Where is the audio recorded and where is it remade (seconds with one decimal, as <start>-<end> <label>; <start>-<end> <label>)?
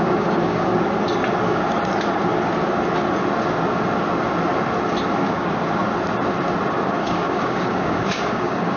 0.0-0.7 remade; 0.7-1.4 recorded; 1.4-2.2 remade; 2.2-5.1 recorded; 5.1-5.8 remade; 5.8-6.7 recorded; 6.7-8.8 remade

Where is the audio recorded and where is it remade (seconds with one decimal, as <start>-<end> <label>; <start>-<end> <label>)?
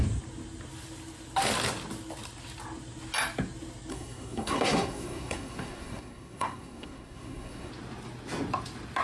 0.0-3.9 recorded; 3.9-7.7 remade; 7.7-9.0 recorded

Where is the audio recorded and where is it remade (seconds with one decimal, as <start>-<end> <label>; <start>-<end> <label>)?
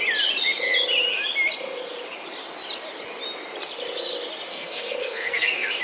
0.0-4.5 recorded; 4.5-5.8 remade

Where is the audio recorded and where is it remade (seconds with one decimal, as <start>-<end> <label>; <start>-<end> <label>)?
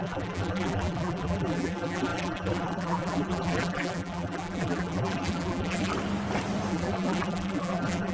0.0-5.9 remade; 5.9-6.7 recorded; 6.7-8.1 remade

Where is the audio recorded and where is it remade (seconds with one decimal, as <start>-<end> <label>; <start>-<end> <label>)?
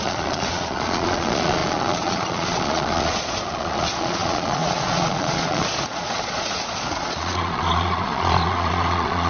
0.0-9.3 remade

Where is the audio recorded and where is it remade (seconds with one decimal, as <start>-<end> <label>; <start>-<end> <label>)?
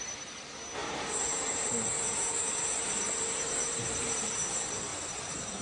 0.0-0.8 recorded; 0.8-4.2 remade; 4.2-4.9 recorded; 4.9-5.6 remade